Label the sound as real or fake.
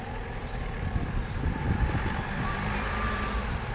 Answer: fake